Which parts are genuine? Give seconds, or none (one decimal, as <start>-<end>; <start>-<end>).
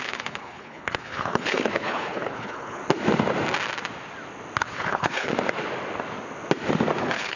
2.8-4.6; 5.3-7.0